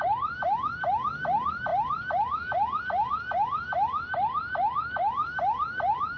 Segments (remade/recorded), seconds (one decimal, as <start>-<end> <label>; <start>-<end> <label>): 0.0-6.2 recorded